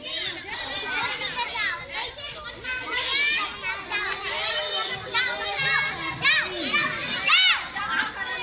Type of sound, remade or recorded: recorded